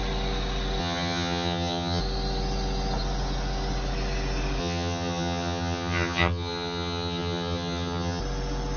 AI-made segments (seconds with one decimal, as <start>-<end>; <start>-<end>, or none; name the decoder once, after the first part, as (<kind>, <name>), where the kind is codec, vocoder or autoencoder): 0.8-2.0 (vocoder, HiFi-GAN); 4.6-8.2